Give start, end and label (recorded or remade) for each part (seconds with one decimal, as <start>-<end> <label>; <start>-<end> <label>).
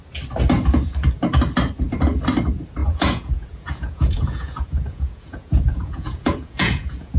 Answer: 0.0-2.8 recorded; 2.8-7.2 remade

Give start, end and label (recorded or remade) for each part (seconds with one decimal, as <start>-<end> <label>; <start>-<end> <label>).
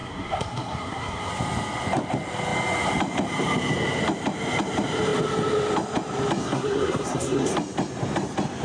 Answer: 0.0-1.3 remade; 1.3-6.4 recorded; 6.4-7.5 remade; 7.5-8.6 recorded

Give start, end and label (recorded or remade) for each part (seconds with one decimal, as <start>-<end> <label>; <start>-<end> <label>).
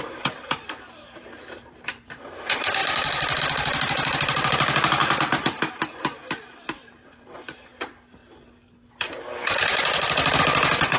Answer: 0.0-8.2 remade; 8.2-10.4 recorded; 10.4-11.0 remade